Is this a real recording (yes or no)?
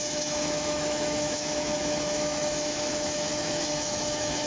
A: no